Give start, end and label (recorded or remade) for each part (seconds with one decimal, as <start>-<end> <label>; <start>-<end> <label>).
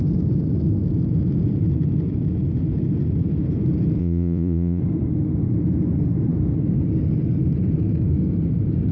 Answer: 0.0-4.0 recorded; 4.0-4.8 remade; 4.8-8.9 recorded